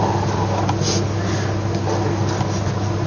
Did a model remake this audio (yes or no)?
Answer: no